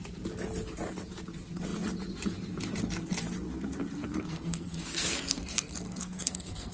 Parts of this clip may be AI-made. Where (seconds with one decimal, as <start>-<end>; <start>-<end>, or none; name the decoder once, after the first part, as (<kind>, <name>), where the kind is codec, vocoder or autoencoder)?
4.1-6.7 (codec, SNAC)